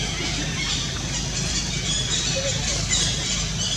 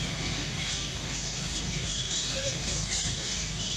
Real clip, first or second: first